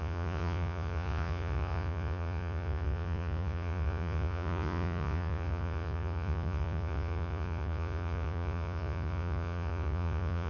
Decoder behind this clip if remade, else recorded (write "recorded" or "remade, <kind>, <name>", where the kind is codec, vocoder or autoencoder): remade, vocoder, Vocos